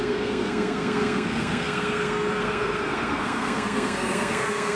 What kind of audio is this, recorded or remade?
remade